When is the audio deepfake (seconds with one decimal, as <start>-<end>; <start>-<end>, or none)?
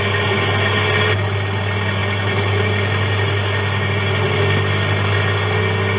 none